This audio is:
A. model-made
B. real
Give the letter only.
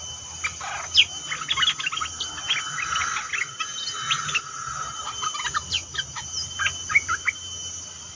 B